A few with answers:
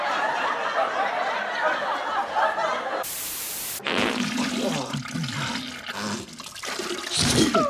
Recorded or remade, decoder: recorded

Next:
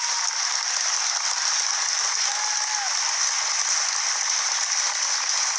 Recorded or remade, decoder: recorded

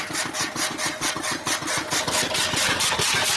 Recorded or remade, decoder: recorded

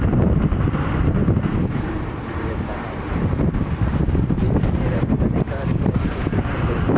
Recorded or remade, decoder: remade, vocoder, BigVGAN v2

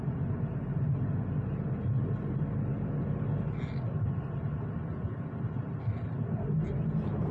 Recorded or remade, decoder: recorded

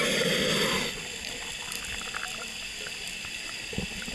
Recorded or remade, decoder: recorded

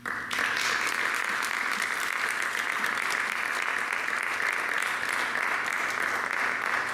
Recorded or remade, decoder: recorded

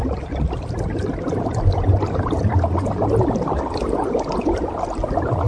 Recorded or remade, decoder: recorded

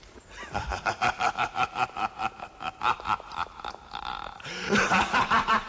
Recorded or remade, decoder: remade, vocoder, BigVGAN v2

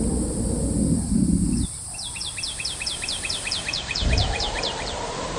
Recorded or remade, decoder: remade, vocoder, BigVGAN v2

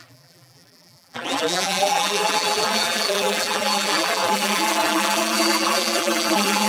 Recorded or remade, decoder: remade, vocoder, BigVGAN v2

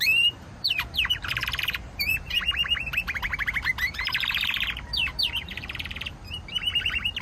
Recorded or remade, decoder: remade, vocoder, BigVGAN v2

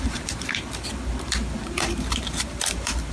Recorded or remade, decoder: remade, vocoder, BigVGAN v2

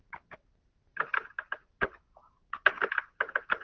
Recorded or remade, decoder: recorded